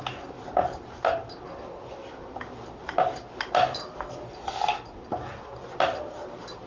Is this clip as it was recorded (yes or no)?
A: yes